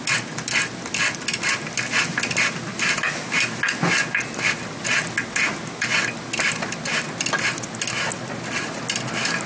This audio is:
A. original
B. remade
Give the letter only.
A